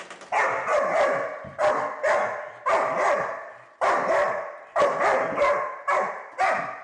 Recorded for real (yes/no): yes